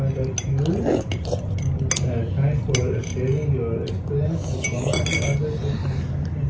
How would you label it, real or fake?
real